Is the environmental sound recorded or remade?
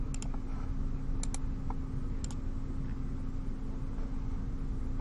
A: recorded